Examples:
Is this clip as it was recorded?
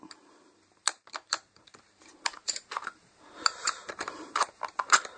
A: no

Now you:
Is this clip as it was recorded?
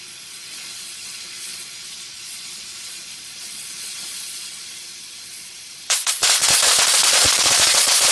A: no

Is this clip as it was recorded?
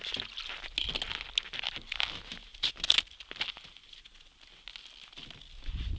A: yes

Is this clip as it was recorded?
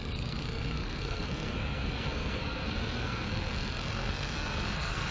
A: no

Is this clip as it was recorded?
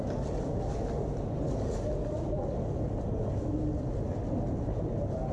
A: yes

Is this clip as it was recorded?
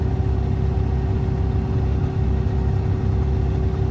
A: yes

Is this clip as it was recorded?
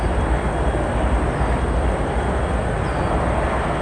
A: yes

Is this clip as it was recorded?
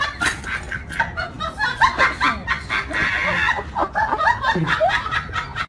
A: yes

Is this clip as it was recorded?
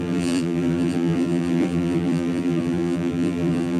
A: no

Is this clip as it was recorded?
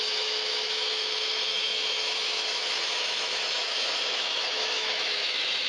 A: no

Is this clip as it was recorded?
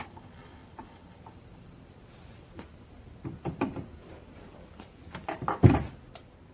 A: yes